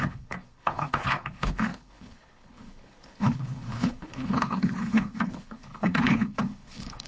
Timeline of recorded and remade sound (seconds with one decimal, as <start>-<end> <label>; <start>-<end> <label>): 0.0-7.1 remade